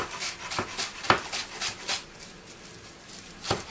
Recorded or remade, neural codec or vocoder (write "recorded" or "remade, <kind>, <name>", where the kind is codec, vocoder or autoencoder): recorded